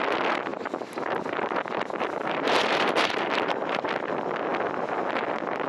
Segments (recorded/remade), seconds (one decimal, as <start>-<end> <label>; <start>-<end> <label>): 0.0-0.5 recorded; 0.5-3.9 remade; 3.9-5.7 recorded

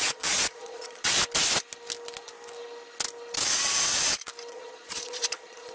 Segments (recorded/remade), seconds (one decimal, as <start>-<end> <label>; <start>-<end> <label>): 0.0-1.2 remade; 1.2-4.5 recorded; 4.5-5.7 remade

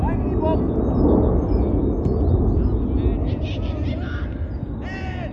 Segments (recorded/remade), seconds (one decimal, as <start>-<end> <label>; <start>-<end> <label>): 0.0-5.3 recorded

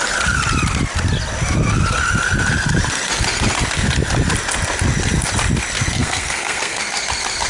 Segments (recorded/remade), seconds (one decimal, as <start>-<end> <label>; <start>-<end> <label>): 0.0-6.0 recorded; 6.0-6.8 remade; 6.8-7.5 recorded

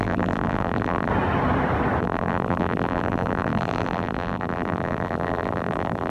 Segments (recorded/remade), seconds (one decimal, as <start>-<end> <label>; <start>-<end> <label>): 0.0-1.1 remade; 1.1-2.0 recorded; 2.0-6.1 remade

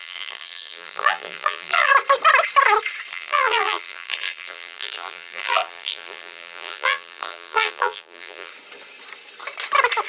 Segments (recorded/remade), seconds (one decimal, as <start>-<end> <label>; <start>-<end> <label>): 0.0-1.9 remade; 1.9-3.1 recorded; 3.1-8.5 remade; 8.5-10.1 recorded